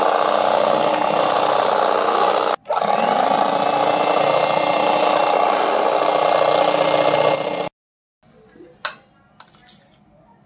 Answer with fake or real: real